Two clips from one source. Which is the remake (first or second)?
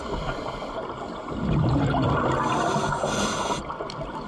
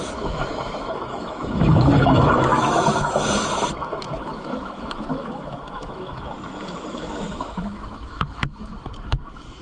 second